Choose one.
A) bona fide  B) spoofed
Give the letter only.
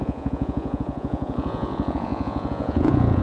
B